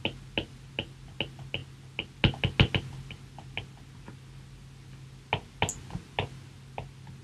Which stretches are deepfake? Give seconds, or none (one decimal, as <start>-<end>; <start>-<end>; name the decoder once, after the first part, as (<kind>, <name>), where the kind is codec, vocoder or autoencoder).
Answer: none